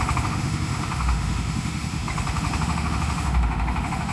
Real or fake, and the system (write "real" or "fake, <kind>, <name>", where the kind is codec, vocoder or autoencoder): fake, autoencoder, DAC-VAE